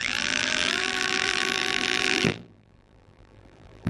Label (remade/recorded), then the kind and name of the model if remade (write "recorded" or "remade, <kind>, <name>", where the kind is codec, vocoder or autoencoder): remade, vocoder, BigVGAN v2